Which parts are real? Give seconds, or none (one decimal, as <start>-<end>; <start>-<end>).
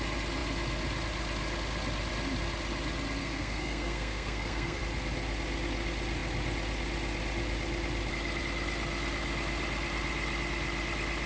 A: 0.0-3.2; 4.8-11.3